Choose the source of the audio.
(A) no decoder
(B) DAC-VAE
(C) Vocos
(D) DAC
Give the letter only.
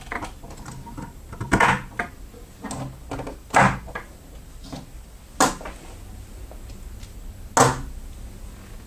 A